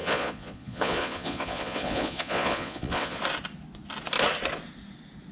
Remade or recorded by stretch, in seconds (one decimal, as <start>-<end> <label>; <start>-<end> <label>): 0.0-3.2 remade; 3.2-5.3 recorded